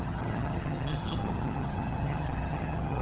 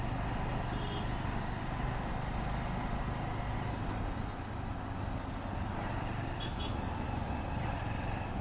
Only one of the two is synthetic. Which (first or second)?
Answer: first